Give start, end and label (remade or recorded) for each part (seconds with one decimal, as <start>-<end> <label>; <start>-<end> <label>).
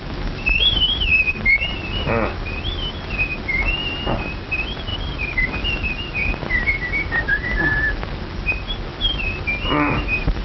0.0-3.8 recorded; 3.8-4.5 remade; 4.5-4.9 recorded; 4.9-7.6 remade; 7.6-10.4 recorded